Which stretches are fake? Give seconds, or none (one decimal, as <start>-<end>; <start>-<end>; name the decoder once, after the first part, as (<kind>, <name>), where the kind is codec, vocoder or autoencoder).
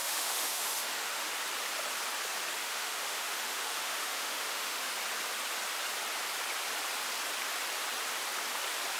0.0-1.3 (autoencoder, DAC-VAE); 2.6-4.9